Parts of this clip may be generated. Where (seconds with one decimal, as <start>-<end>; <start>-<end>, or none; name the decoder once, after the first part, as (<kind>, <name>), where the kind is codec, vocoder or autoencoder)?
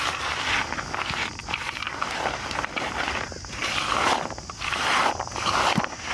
none